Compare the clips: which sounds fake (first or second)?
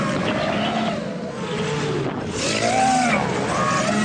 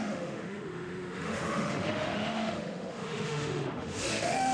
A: second